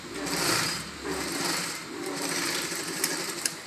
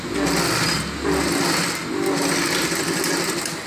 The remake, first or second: first